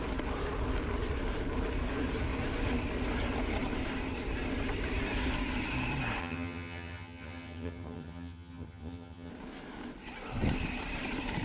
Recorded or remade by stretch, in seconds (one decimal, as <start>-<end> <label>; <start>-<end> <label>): 0.0-6.2 recorded; 6.2-9.3 remade; 9.3-11.4 recorded